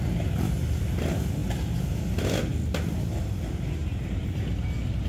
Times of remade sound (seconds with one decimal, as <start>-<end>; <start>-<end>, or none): 3.8-4.5